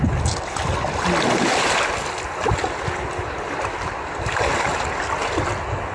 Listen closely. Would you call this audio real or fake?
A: real